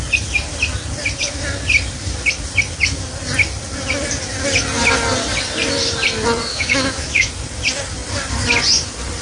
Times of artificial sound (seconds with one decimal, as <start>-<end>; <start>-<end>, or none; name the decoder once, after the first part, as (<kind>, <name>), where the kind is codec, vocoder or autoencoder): 6.5-7.3 (autoencoder, DAC-VAE)